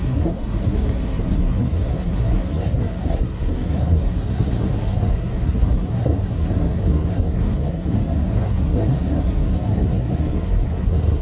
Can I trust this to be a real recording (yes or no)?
no